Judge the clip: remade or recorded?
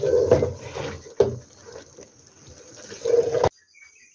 recorded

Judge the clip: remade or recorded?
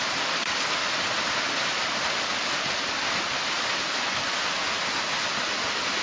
recorded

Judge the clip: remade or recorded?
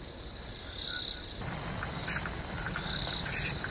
recorded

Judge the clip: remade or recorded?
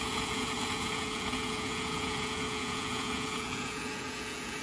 remade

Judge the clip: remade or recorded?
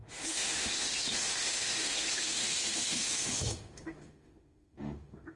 remade